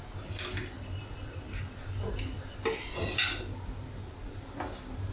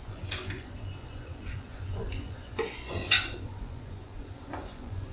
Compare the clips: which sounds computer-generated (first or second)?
second